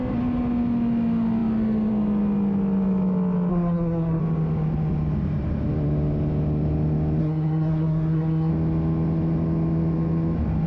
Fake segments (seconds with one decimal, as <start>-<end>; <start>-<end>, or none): 3.5-4.2; 7.2-8.5